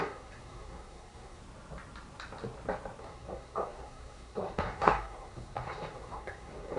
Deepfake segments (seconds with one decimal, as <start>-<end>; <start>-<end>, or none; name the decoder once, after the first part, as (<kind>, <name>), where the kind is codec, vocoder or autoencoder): 0.0-1.4 (codec, SNAC); 3.0-6.8